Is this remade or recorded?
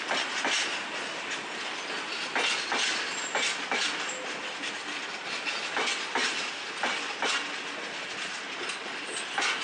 recorded